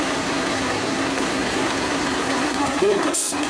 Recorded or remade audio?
remade